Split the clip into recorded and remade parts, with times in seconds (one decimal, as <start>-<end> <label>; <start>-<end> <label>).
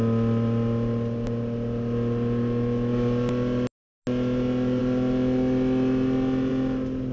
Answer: 0.0-7.1 recorded